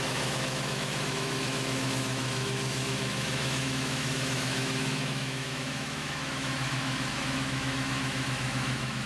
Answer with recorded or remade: remade